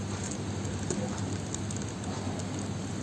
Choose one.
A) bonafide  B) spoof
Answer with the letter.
B